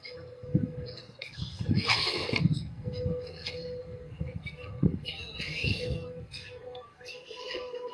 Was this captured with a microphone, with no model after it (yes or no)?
no